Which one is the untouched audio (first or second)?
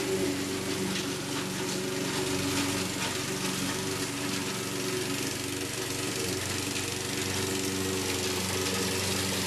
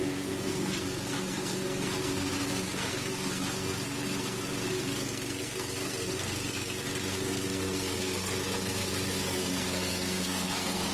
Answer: first